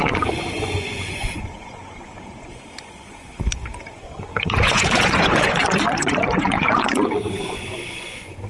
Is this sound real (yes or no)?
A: no